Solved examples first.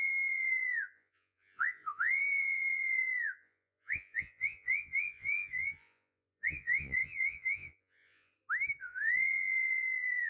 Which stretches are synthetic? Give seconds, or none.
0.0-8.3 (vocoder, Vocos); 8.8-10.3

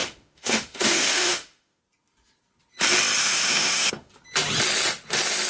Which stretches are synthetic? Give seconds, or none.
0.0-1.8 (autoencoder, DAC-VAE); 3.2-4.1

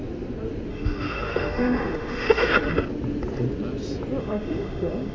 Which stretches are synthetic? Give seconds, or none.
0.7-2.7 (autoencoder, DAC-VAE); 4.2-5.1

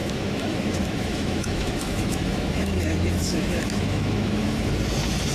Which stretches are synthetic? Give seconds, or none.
0.0-2.8 (autoencoder, DAC-VAE); 3.2-4.7

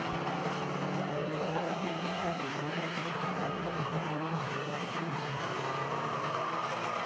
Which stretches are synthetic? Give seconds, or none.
1.1-5.4 (codec, SNAC)

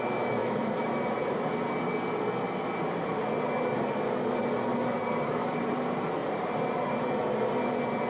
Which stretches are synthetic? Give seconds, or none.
0.4-1.5 (vocoder, BigVGAN v2); 5.0-5.7; 6.2-7.1

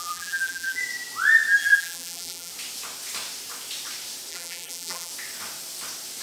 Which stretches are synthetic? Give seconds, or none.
0.0-0.8 (vocoder, BigVGAN v2); 1.6-2.5; 4.3-5.1

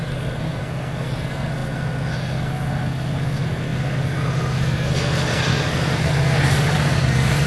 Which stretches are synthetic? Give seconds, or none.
0.0-7.5 (codec, SNAC)